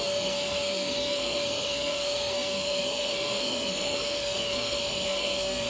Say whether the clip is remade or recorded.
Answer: remade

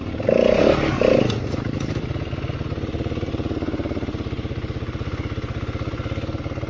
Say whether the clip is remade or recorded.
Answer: recorded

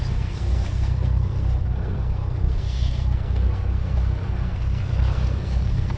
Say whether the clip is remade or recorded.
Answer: remade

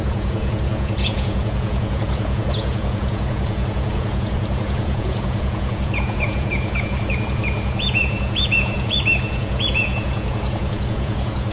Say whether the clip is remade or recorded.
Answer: remade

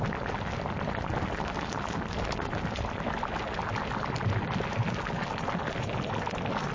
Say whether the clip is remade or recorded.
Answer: recorded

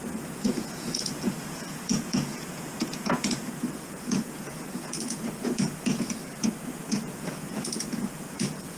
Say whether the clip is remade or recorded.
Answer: remade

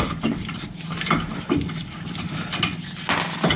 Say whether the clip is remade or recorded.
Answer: recorded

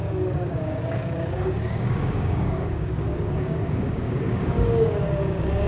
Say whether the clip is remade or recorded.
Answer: remade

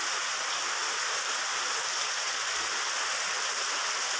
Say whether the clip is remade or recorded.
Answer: recorded